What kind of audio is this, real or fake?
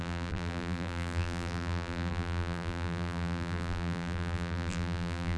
fake